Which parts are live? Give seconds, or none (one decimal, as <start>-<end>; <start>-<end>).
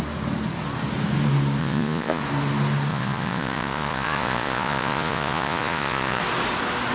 0.0-1.6; 2.2-2.9; 6.2-6.9